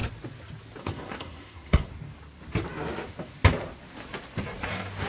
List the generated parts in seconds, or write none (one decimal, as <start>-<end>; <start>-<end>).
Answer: 0.8-1.9